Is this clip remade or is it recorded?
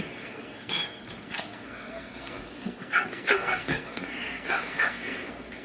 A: remade